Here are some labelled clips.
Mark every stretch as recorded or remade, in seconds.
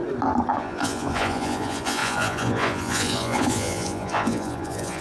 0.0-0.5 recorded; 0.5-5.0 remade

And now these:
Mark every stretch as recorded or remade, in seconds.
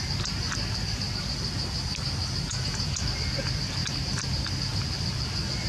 0.0-2.5 recorded; 2.5-3.0 remade; 3.0-5.7 recorded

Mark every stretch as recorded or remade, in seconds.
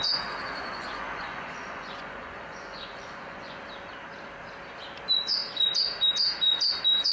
0.0-3.6 remade; 3.6-7.1 recorded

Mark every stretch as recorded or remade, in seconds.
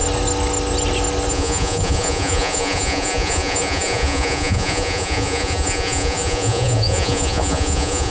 0.0-1.3 recorded; 1.3-8.1 remade